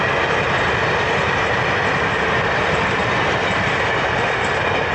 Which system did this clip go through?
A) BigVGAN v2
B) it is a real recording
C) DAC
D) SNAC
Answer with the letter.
B